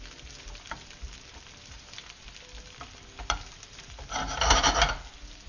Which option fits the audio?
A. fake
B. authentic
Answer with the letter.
B